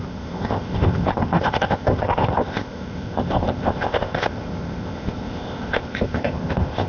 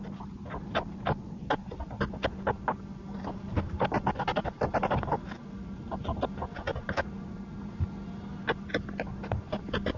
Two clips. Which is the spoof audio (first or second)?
first